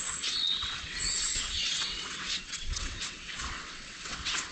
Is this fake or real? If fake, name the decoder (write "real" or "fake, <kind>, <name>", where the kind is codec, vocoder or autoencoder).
fake, vocoder, WaveNeXt